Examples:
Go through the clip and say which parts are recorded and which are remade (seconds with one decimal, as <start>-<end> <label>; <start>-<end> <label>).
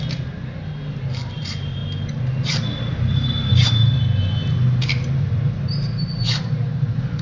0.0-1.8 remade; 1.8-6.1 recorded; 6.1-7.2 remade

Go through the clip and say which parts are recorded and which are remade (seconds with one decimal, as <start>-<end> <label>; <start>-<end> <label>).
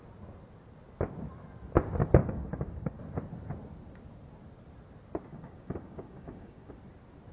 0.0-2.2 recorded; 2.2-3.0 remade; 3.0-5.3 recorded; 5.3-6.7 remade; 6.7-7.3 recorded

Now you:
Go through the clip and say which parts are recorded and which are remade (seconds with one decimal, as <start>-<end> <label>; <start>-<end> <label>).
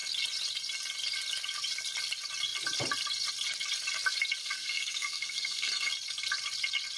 0.0-4.4 recorded; 4.4-5.9 remade; 5.9-7.0 recorded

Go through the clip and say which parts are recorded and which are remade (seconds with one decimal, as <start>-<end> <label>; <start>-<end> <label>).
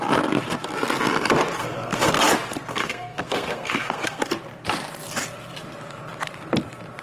0.0-1.6 recorded; 1.6-2.2 remade; 2.2-2.7 recorded; 2.7-4.2 remade; 4.2-7.0 recorded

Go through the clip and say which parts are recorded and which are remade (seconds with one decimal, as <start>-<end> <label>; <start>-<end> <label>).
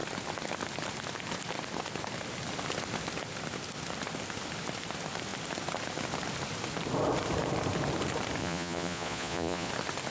0.0-8.4 recorded; 8.4-9.7 remade; 9.7-10.1 recorded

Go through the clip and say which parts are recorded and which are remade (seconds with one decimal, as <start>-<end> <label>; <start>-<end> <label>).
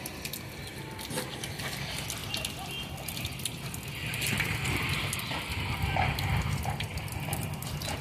0.0-8.0 recorded